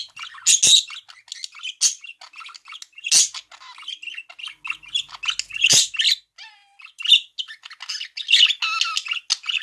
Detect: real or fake real